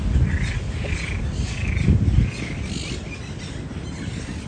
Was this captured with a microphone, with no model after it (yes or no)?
yes